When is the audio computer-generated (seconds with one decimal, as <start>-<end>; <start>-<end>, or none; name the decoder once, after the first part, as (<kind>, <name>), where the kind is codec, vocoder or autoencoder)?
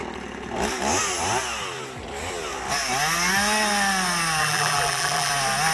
4.4-5.3 (vocoder, BigVGAN v2)